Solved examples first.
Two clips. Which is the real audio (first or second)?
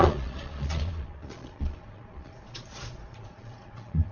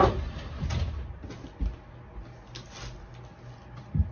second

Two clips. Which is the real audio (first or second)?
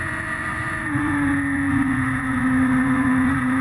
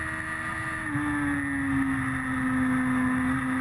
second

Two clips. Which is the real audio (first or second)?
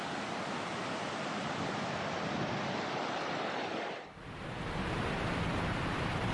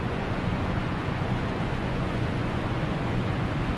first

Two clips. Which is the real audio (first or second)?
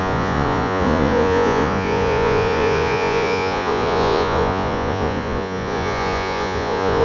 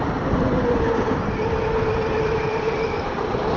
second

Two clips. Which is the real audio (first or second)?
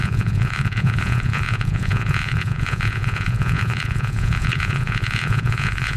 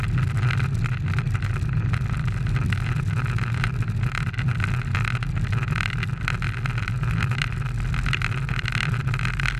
second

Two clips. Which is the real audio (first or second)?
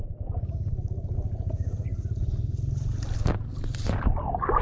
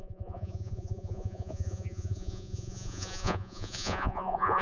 first